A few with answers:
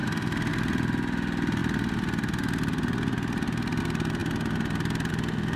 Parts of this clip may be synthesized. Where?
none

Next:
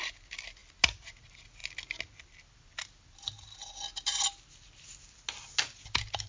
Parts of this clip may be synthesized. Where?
none

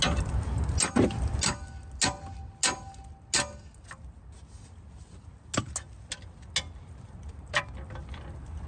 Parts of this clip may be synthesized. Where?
6.8-7.6 (vocoder, BigVGAN v2)

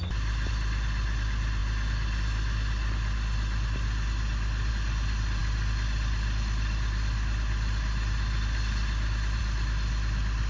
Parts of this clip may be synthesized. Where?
none

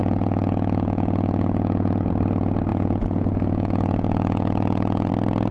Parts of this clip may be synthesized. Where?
0.0-2.1 (vocoder, Vocos); 2.7-5.1